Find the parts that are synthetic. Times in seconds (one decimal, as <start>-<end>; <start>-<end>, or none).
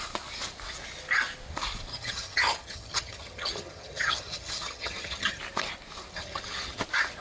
1.9-5.4; 6.1-6.8